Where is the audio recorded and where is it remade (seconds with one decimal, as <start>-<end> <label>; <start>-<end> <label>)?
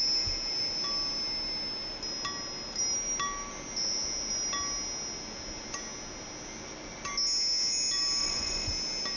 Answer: 0.0-8.2 recorded; 8.2-8.7 remade; 8.7-9.2 recorded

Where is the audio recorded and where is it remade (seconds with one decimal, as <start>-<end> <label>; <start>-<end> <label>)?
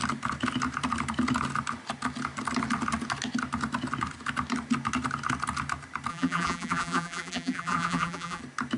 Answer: 0.0-6.1 recorded; 6.1-8.4 remade; 8.4-8.8 recorded